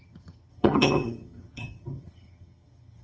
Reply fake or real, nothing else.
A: fake